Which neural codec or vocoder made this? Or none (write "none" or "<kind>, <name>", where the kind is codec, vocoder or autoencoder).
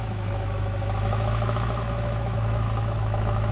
autoencoder, DAC-VAE